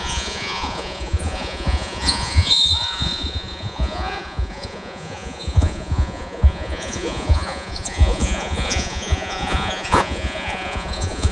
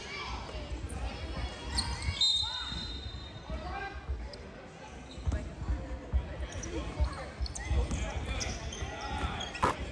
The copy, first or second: first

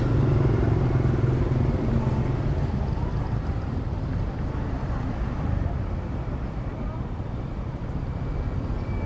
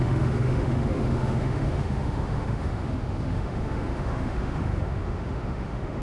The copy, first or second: second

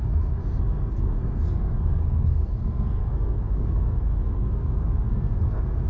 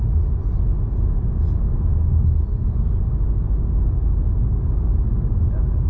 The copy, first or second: first